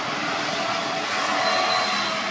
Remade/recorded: recorded